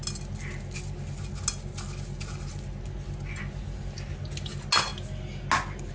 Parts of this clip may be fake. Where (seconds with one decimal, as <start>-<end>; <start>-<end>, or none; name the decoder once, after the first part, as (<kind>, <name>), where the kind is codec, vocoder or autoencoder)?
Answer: none